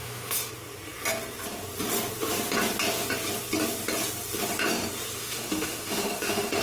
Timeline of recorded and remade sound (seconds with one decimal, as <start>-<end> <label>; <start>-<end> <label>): 0.0-0.5 remade; 0.5-5.2 recorded; 5.2-6.6 remade